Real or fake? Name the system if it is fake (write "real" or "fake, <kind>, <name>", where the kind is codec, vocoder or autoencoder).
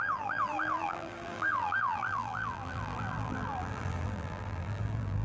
fake, vocoder, BigVGAN v2